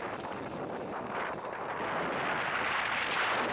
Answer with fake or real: real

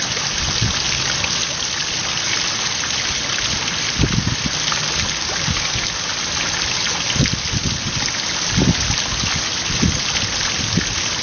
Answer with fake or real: real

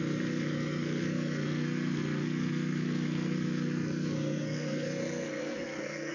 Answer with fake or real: fake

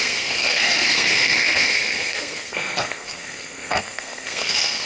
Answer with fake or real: fake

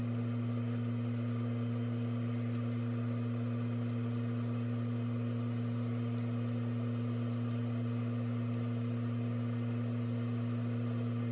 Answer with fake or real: real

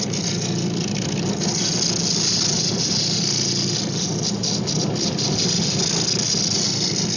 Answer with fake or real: real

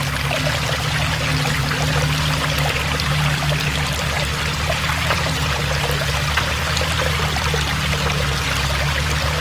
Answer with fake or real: real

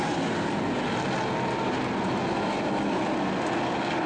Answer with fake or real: real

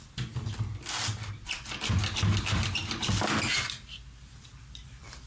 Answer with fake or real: real